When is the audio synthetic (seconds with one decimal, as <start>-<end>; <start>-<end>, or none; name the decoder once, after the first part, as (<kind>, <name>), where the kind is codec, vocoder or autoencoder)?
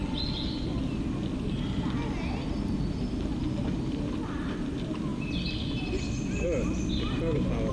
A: none